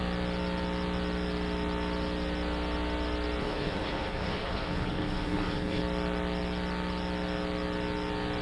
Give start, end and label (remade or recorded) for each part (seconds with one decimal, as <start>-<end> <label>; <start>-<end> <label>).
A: 0.0-3.4 recorded; 3.4-5.8 remade; 5.8-8.4 recorded